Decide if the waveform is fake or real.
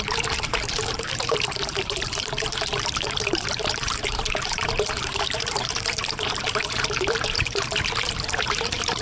fake